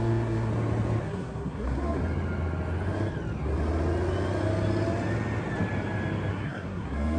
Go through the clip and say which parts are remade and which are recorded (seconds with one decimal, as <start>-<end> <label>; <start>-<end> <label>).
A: 0.0-0.5 remade; 0.5-1.0 recorded; 1.0-2.0 remade; 2.0-6.3 recorded; 6.3-7.2 remade